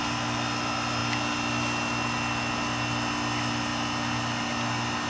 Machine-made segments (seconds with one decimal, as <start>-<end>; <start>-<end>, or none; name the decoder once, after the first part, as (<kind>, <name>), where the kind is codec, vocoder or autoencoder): none